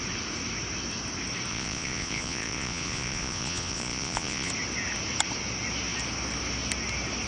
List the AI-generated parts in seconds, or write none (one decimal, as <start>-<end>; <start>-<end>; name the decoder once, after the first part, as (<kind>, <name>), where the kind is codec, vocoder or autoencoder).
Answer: 1.5-4.5 (vocoder, Vocos)